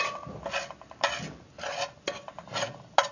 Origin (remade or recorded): recorded